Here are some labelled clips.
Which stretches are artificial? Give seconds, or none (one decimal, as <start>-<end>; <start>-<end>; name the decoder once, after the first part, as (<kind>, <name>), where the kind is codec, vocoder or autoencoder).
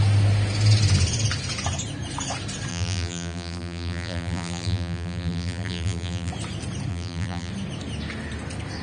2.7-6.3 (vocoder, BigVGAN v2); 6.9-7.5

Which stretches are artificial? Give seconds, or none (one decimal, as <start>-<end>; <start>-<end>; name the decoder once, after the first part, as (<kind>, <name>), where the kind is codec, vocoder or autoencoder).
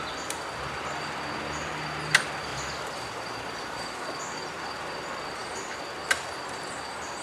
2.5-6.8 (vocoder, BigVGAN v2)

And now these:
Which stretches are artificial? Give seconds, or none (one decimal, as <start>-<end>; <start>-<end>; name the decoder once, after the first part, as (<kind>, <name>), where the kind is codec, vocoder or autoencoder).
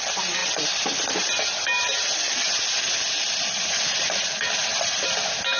none